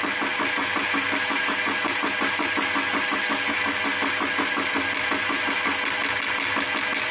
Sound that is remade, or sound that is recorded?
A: recorded